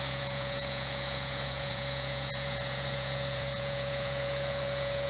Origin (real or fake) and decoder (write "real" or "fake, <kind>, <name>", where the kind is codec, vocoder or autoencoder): fake, vocoder, Vocos